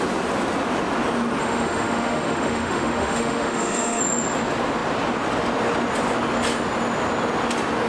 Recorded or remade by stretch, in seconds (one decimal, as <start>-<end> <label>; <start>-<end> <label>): 0.0-1.4 recorded; 1.4-4.0 remade; 4.0-7.9 recorded

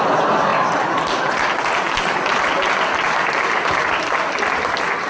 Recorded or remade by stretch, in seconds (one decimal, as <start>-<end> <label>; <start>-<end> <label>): 0.0-5.1 recorded

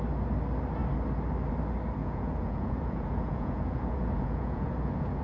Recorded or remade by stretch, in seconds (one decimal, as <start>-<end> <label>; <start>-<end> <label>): 0.0-2.0 recorded; 2.0-5.2 remade

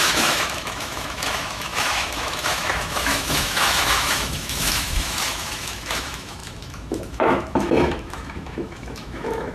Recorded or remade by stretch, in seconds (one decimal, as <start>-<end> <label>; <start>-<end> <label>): 0.0-9.5 remade